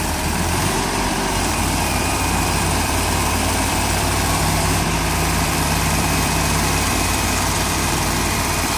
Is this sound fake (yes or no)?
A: yes